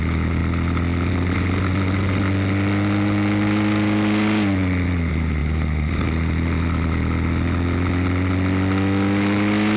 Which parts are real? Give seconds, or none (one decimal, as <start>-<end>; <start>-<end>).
0.0-9.8